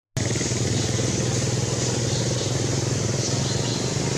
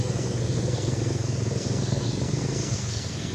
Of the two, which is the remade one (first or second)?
second